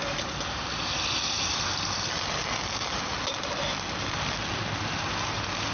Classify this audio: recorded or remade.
recorded